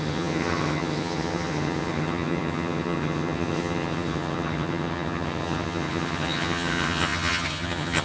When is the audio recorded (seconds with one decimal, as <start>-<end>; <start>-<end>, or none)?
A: none